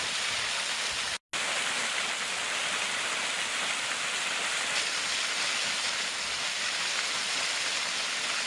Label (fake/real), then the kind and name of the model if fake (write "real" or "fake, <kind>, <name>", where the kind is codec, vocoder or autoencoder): real